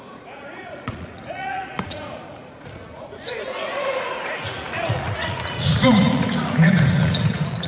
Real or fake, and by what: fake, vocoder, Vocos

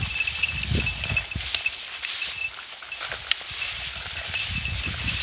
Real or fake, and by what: real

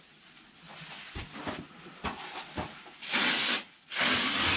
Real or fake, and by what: real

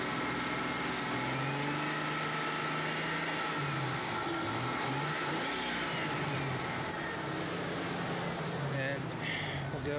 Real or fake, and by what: real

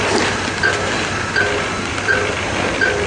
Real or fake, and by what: real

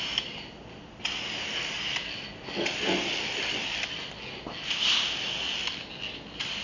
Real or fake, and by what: real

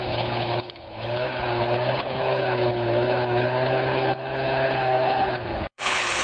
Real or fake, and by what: fake, codec, HILCodec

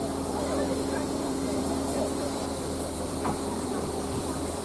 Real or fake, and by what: fake, vocoder, BigVGAN v2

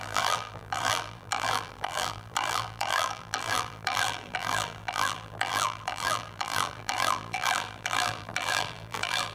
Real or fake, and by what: fake, vocoder, BigVGAN v2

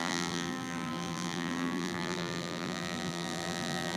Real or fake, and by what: fake, vocoder, BigVGAN v2